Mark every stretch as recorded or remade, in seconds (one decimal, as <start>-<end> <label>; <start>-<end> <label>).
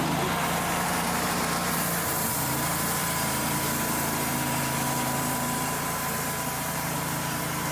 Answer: 0.0-7.7 remade